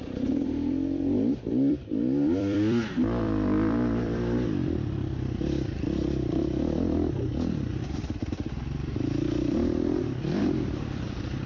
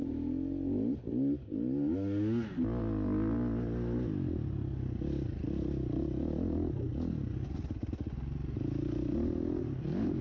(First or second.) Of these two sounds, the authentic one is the second